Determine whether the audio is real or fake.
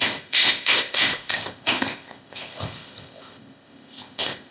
fake